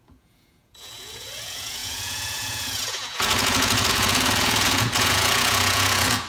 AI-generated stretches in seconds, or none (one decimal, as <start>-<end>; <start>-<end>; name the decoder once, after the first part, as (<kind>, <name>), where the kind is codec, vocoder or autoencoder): 0.0-6.3 (vocoder, Vocos)